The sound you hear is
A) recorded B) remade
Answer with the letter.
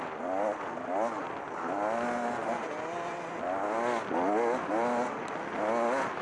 A